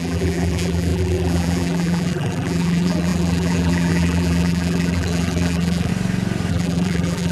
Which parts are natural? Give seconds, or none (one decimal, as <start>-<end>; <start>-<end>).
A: 5.9-6.5